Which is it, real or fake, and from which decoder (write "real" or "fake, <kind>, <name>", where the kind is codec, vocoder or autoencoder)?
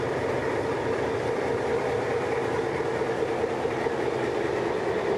real